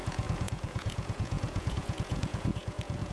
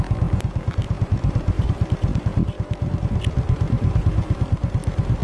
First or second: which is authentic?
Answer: second